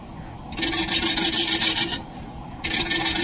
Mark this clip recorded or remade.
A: recorded